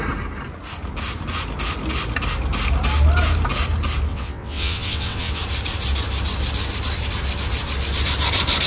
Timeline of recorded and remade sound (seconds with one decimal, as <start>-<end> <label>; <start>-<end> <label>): 0.0-4.1 recorded; 4.1-5.4 remade; 5.4-8.7 recorded